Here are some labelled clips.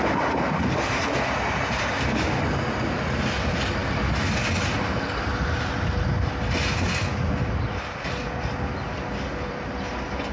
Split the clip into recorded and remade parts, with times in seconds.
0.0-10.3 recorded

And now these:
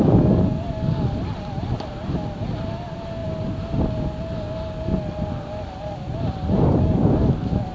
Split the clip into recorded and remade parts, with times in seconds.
0.0-7.7 recorded

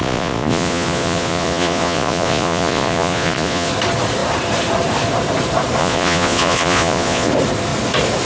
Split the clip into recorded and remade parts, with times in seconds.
0.0-3.7 remade; 3.7-5.8 recorded; 5.8-7.3 remade; 7.3-8.3 recorded